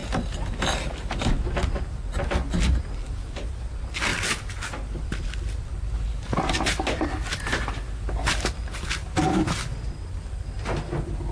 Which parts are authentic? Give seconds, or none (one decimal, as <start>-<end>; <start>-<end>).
0.0-11.3